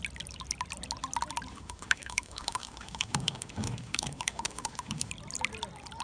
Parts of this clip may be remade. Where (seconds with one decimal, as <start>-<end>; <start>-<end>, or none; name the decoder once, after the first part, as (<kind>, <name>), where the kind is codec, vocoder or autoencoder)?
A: 1.5-5.1 (autoencoder, DAC-VAE)